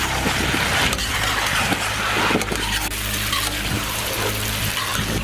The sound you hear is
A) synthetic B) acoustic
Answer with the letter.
A